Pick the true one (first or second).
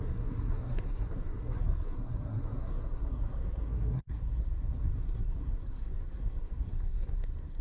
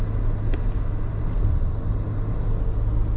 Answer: second